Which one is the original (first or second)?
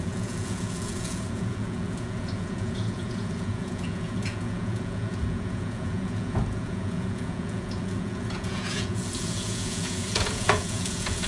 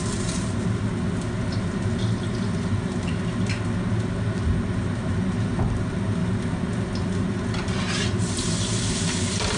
second